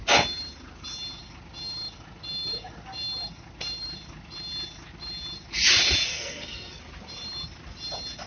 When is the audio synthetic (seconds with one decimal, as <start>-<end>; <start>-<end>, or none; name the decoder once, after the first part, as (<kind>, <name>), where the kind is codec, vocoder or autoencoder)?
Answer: 6.1-6.8 (codec, SNAC)